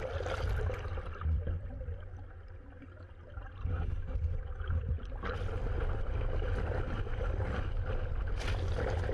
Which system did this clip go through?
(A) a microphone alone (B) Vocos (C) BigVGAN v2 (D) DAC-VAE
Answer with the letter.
A